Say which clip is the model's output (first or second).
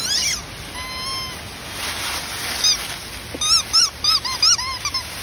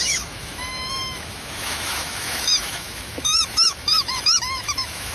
second